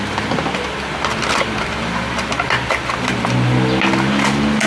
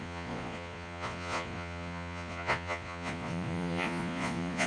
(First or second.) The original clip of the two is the first